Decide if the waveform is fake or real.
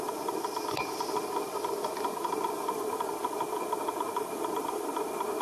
real